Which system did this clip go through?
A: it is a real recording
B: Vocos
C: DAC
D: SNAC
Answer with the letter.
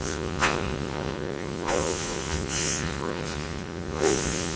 B